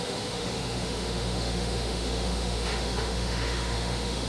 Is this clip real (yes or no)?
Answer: no